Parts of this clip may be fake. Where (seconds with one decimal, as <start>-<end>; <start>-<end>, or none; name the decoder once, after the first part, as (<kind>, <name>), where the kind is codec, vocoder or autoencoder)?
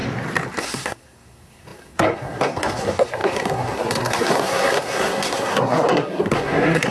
0.6-6.9 (codec, SNAC)